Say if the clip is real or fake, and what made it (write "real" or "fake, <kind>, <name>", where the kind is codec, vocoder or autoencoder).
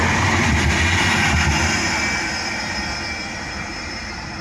real